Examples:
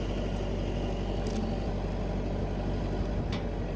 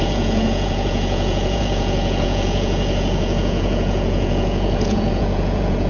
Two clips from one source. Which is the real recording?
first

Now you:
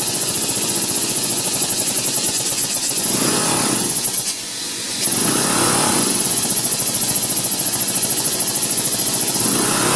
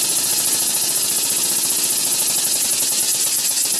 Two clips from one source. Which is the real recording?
second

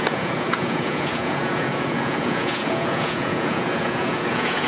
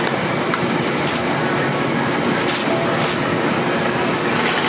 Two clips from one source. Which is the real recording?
second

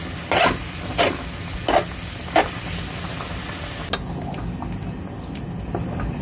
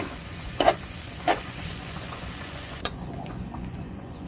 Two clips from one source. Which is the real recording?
first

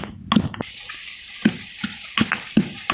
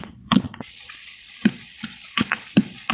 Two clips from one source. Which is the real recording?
first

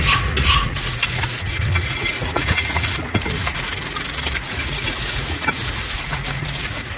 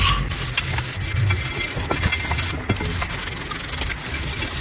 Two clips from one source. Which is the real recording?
second